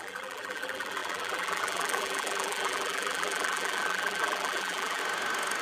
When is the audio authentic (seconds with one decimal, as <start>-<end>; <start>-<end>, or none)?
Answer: 5.0-5.6